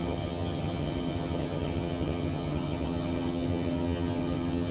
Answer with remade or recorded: remade